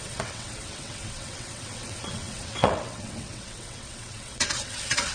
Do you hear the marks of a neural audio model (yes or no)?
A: yes